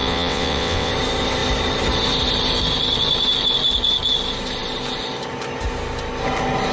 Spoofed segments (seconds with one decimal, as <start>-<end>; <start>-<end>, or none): 0.0-0.9